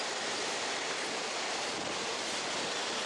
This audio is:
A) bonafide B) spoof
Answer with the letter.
B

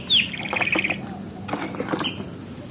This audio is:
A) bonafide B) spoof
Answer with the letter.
A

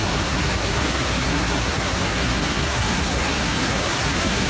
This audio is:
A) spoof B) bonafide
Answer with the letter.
A